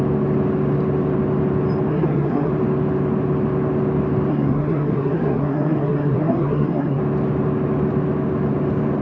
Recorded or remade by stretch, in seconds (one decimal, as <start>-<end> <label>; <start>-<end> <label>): 0.0-1.9 recorded; 1.9-2.5 remade; 2.5-4.3 recorded; 4.3-7.0 remade; 7.0-9.0 recorded